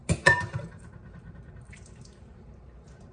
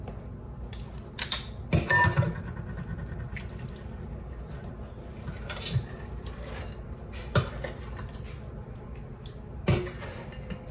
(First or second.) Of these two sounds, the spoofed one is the first